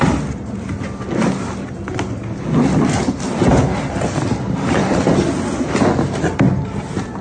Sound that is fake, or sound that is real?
real